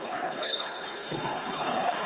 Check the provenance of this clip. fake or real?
fake